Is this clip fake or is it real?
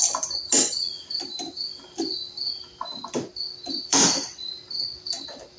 fake